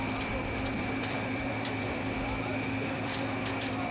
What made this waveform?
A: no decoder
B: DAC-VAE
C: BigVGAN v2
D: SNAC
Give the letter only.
C